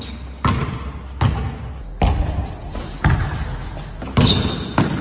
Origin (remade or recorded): recorded